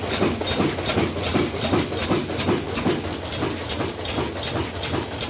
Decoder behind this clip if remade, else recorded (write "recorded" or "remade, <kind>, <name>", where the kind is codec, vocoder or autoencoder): recorded